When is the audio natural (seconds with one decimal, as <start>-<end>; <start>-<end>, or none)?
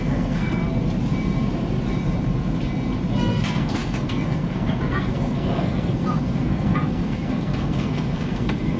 0.6-3.2